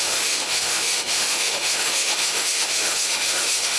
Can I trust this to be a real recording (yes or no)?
no